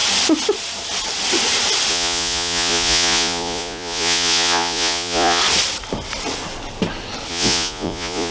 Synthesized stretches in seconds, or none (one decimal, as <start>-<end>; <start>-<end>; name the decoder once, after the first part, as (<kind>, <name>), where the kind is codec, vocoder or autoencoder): 1.9-5.4 (vocoder, Vocos); 7.3-8.3